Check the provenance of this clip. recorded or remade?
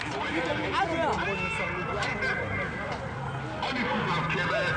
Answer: recorded